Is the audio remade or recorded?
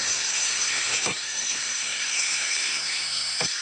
remade